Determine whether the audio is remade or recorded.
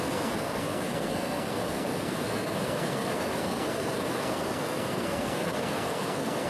remade